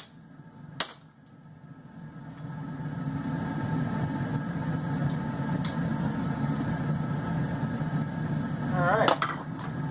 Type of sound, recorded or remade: recorded